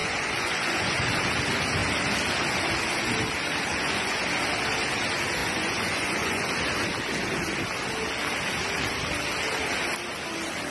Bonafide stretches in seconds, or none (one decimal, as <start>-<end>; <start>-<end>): 1.3-3.7; 4.2-5.4; 6.5-10.7